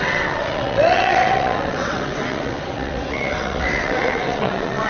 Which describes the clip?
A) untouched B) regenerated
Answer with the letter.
B